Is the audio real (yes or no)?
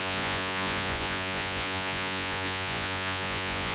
no